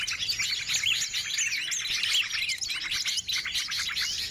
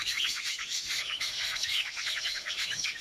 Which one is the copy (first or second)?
second